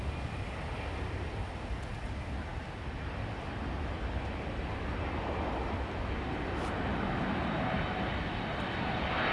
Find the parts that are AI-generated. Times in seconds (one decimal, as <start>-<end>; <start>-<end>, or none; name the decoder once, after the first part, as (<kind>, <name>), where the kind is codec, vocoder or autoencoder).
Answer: none